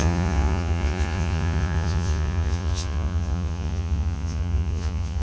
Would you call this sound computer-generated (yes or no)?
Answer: yes